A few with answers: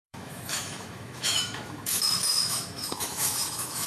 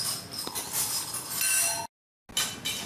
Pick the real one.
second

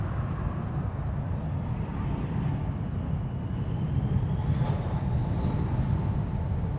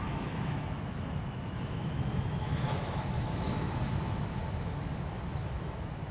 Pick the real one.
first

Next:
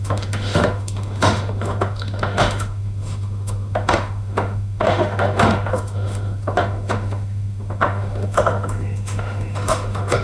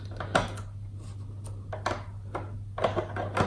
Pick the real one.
second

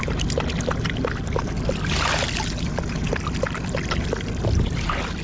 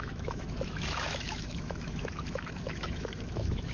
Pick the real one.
first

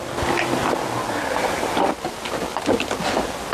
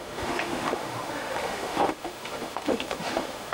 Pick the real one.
first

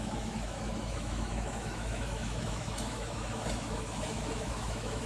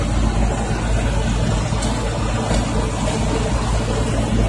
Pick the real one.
second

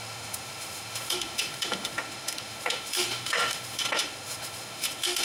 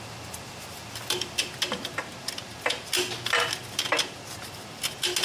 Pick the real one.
second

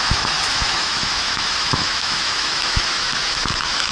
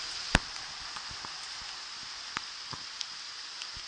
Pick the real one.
second